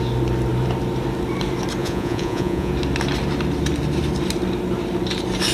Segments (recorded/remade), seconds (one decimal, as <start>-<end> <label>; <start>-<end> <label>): 0.0-1.8 recorded; 1.8-2.7 remade; 2.7-5.5 recorded